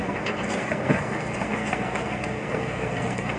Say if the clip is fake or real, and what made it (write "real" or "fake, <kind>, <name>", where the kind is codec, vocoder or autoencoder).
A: fake, codec, SNAC